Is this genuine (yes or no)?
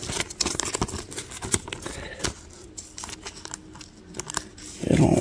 yes